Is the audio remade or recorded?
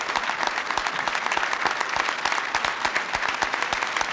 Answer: recorded